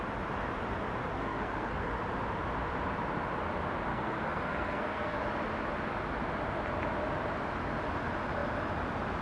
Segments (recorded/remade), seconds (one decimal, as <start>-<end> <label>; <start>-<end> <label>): 0.0-1.1 recorded; 1.1-1.9 remade; 1.9-3.9 recorded; 3.9-5.2 remade; 5.2-9.2 recorded